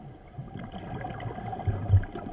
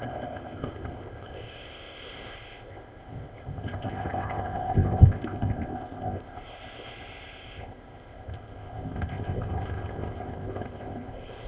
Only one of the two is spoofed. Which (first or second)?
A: second